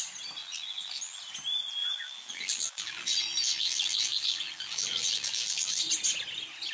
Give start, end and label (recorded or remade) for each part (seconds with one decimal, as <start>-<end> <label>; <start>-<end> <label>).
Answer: 0.0-0.4 recorded; 0.4-1.2 remade; 1.2-1.8 recorded; 1.8-5.8 remade; 5.8-6.7 recorded